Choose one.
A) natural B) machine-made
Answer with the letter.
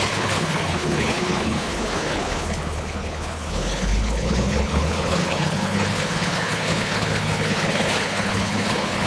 B